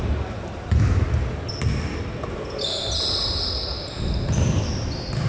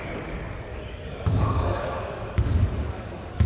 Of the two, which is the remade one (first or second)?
second